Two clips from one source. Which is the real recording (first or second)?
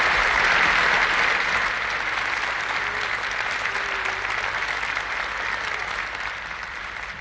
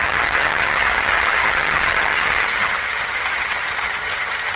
first